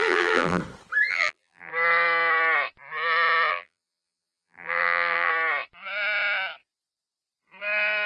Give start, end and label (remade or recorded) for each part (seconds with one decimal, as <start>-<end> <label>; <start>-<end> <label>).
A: 0.0-0.6 remade; 0.6-1.1 recorded; 1.1-1.7 remade; 1.7-3.5 recorded; 3.5-5.3 remade; 5.3-8.1 recorded